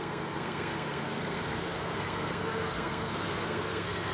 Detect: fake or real fake